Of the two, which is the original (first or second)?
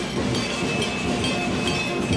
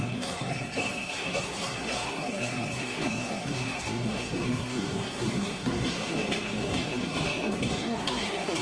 first